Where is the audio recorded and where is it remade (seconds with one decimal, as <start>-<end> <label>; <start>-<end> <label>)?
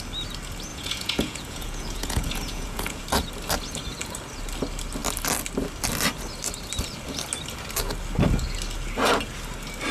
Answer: 0.0-0.7 recorded; 0.7-3.0 remade; 3.0-9.9 recorded